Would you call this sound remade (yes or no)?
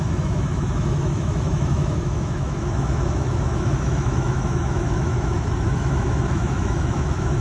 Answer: yes